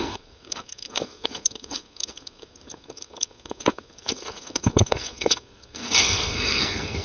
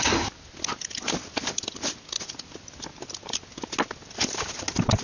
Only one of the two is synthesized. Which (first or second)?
first